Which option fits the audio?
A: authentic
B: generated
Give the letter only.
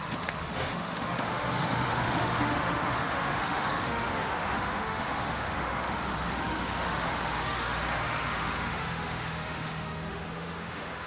B